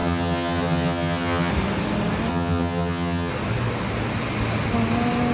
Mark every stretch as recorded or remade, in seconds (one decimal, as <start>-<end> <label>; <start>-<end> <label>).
0.0-1.5 remade; 1.5-2.3 recorded; 2.3-3.3 remade; 3.3-5.3 recorded